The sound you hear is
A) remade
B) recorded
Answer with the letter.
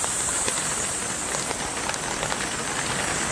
B